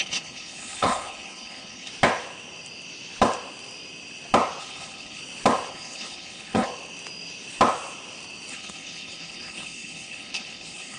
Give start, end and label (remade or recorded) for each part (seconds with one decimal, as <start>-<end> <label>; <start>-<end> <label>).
0.0-1.9 remade; 1.9-4.6 recorded; 4.6-5.2 remade; 5.2-5.7 recorded; 5.7-6.7 remade; 6.7-8.5 recorded; 8.5-11.0 remade